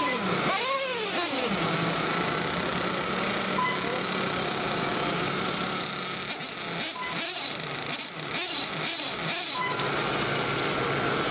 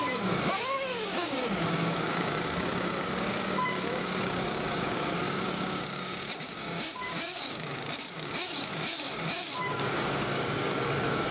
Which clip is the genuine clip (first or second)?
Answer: first